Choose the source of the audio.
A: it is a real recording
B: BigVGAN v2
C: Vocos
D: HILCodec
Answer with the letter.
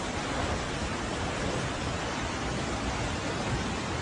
A